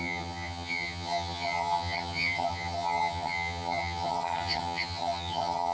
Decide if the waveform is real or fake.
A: fake